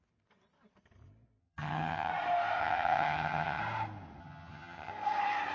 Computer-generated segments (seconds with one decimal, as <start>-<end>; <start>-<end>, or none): 1.4-2.1; 2.6-3.6; 4.2-4.9